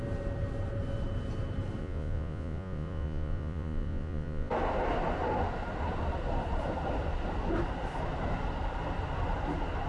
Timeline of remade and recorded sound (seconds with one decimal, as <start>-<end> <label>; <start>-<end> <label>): 0.0-1.8 recorded; 1.8-4.5 remade; 4.5-9.9 recorded